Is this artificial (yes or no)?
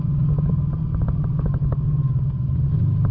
no